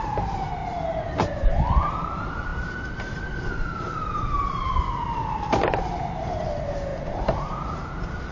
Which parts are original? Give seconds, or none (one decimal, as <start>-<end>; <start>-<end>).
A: 0.6-1.4; 4.7-6.2